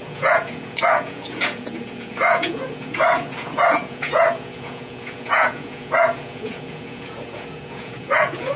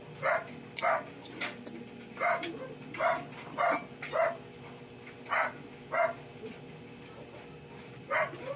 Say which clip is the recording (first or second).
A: second